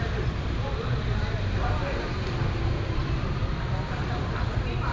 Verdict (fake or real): fake